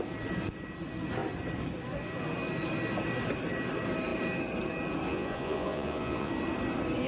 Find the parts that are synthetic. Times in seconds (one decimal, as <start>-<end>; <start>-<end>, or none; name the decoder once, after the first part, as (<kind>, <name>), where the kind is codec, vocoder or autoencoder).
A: 5.1-6.3 (vocoder, Vocos)